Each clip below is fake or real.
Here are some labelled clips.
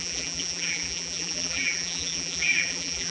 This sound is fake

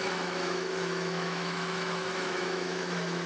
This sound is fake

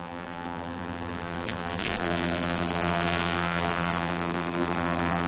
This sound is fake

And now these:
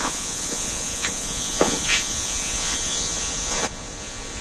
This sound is fake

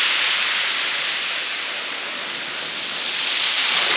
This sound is fake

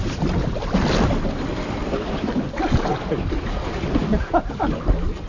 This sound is real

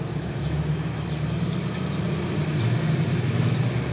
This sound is real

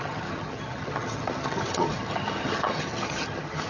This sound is fake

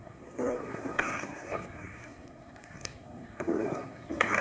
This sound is fake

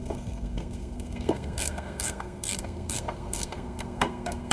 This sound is fake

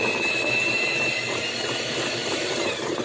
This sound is fake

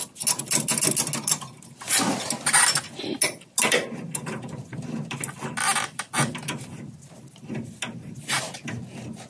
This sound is real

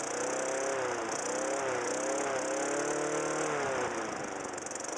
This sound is real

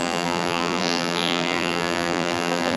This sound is fake